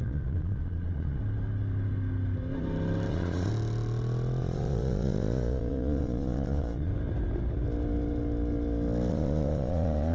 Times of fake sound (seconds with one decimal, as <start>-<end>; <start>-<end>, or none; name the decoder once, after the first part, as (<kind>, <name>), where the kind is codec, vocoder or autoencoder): 0.0-1.2 (vocoder, Vocos); 3.1-3.5; 4.4-6.9; 9.1-10.1